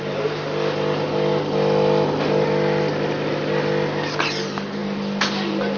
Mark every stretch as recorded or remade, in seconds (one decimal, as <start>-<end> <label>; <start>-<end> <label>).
0.0-5.8 recorded